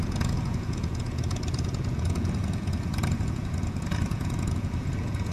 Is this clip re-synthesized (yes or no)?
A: yes